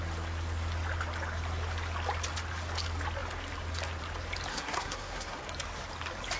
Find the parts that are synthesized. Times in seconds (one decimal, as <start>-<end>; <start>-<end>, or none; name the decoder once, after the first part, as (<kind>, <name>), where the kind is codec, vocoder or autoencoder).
4.5-5.4 (codec, SNAC)